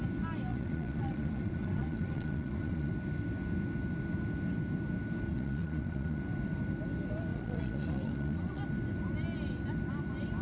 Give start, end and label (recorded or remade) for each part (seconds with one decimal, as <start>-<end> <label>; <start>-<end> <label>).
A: 0.0-0.5 recorded; 0.5-2.9 remade; 2.9-5.3 recorded; 5.3-6.2 remade; 6.2-7.3 recorded; 7.3-8.6 remade; 8.6-10.4 recorded